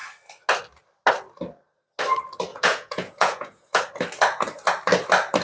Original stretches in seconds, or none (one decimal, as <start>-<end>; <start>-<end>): 0.0-2.5; 3.8-5.4